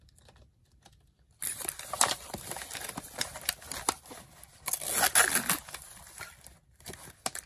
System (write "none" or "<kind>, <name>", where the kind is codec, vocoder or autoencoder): none